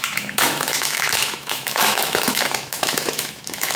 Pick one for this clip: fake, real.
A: fake